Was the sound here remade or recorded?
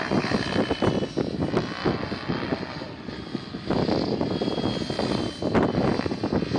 recorded